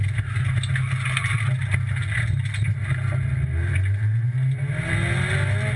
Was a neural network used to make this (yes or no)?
no